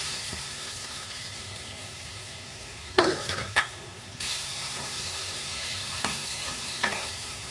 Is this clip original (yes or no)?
no